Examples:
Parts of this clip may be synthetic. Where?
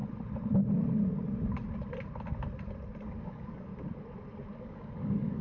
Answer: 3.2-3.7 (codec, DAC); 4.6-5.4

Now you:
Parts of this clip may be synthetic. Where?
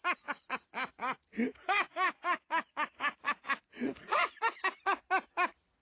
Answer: 1.6-5.1 (vocoder, Vocos)